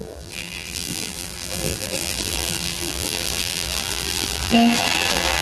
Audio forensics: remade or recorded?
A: remade